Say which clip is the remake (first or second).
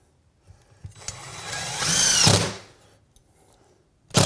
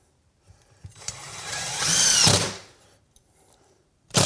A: second